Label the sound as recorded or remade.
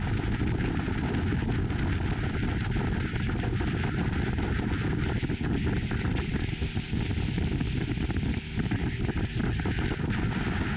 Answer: recorded